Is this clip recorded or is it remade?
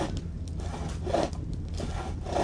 recorded